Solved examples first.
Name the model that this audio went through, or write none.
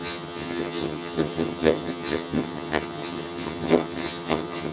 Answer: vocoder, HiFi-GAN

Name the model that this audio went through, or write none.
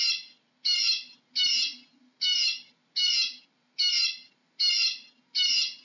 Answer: none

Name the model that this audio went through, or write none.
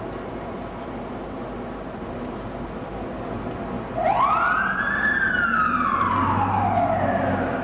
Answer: none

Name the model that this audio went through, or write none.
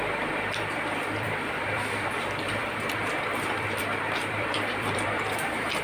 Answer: vocoder, BigVGAN v2